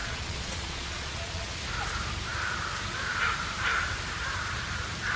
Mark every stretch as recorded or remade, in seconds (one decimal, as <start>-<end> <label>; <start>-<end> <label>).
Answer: 0.0-1.6 remade; 1.6-5.2 recorded